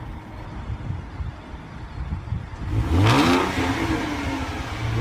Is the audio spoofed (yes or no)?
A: no